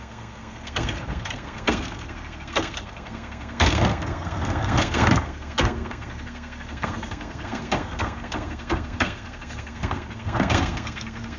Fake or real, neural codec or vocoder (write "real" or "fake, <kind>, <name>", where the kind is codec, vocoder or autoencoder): fake, codec, SNAC